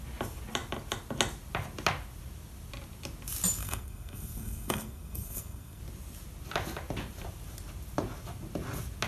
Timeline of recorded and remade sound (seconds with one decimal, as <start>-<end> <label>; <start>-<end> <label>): 0.0-3.6 recorded; 3.6-5.8 remade; 5.8-9.1 recorded